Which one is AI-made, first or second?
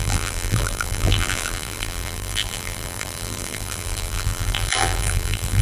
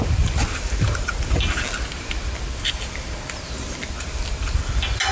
first